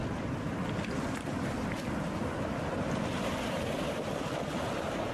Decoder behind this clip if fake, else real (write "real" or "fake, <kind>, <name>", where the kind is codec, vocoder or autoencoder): real